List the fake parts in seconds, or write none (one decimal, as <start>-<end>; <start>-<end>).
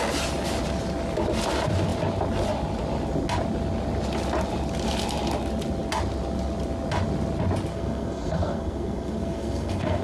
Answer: 7.7-10.0